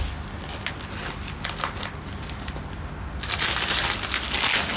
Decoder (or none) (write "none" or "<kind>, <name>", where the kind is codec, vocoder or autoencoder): none